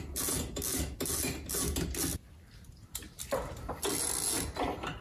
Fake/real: real